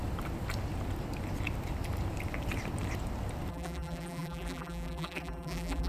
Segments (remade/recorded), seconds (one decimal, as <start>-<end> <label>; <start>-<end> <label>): 0.0-3.5 recorded; 3.5-5.9 remade